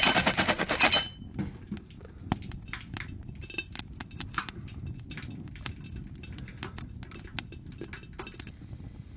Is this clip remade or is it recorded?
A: recorded